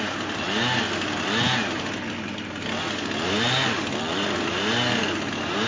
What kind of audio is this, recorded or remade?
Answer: recorded